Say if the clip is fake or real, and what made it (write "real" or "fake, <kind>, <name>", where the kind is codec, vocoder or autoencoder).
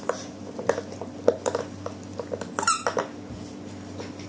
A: real